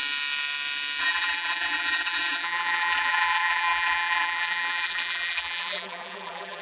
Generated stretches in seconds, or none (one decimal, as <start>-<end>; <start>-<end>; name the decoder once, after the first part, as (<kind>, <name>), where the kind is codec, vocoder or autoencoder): 1.0-6.6 (vocoder, BigVGAN v2)